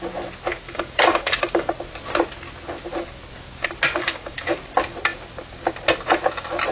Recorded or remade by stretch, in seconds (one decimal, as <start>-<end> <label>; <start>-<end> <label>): 0.0-0.5 recorded; 0.5-1.7 remade; 1.7-4.0 recorded; 4.0-4.6 remade; 4.6-6.7 recorded

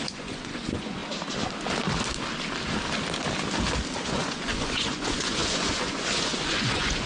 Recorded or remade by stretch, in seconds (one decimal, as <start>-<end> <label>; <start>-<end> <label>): 0.0-1.0 remade; 1.0-4.0 recorded; 4.0-7.1 remade

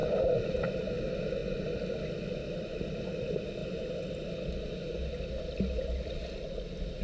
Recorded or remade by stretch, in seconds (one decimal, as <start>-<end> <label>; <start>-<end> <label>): 0.0-3.6 recorded; 3.6-4.3 remade; 4.3-7.0 recorded

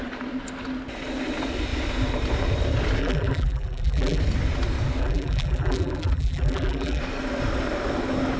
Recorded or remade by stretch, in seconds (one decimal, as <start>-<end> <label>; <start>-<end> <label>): 0.0-3.0 recorded; 3.0-4.2 remade; 4.2-5.0 recorded; 5.0-7.0 remade; 7.0-8.4 recorded

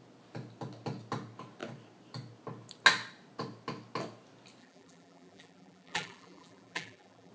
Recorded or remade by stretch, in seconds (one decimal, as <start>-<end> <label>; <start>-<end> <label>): 0.0-4.6 recorded; 4.6-7.3 remade

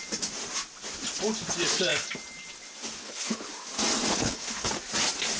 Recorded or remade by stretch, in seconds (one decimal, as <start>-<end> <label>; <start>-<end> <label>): 0.0-3.0 recorded; 3.0-3.5 remade; 3.5-4.1 recorded; 4.1-4.7 remade; 4.7-5.4 recorded